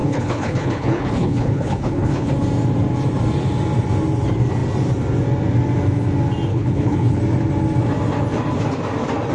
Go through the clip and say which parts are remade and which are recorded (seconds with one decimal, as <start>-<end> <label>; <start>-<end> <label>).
0.0-2.3 remade; 2.3-6.5 recorded; 6.5-7.2 remade; 7.2-9.3 recorded